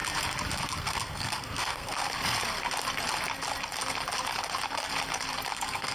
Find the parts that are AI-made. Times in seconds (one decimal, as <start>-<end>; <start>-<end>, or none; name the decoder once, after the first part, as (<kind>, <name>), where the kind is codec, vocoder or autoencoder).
0.8-2.0 (codec, SNAC); 5.5-5.9